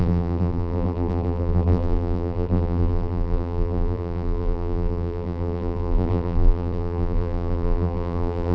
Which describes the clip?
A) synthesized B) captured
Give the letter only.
A